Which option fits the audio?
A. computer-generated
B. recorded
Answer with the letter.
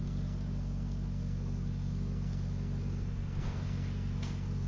A